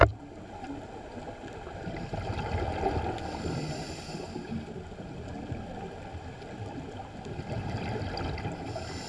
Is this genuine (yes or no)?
yes